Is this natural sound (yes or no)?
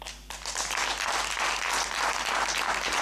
yes